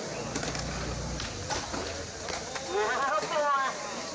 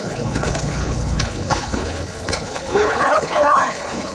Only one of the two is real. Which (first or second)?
first